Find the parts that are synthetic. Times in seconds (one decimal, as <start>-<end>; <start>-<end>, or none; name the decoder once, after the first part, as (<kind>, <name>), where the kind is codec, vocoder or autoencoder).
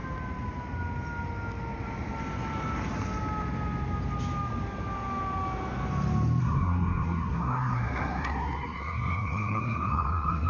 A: 6.4-10.5 (codec, SNAC)